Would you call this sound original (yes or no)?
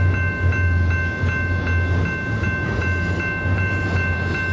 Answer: yes